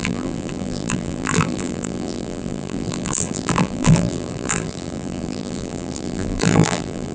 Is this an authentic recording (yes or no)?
no